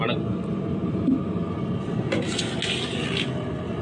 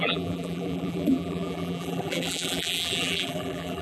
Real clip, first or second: first